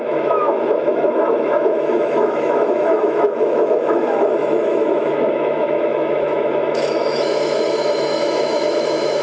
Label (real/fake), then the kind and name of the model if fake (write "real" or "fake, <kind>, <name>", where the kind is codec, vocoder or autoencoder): fake, autoencoder, DAC-VAE